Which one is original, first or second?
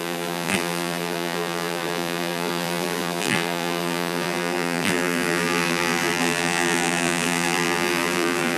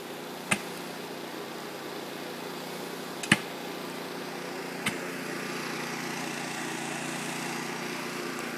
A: second